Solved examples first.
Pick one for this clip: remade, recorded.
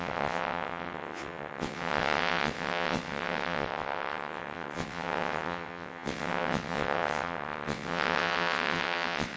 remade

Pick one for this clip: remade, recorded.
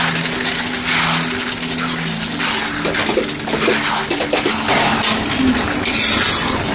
recorded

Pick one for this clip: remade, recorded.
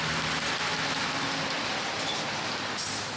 recorded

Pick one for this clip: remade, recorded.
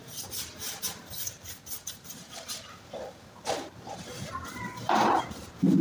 remade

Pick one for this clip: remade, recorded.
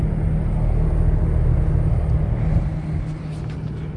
recorded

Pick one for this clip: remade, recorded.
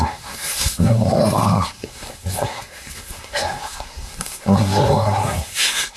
remade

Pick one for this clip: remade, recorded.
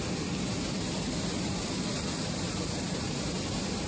remade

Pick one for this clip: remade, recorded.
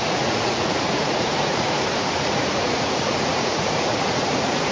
remade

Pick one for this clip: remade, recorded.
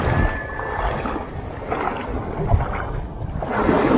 recorded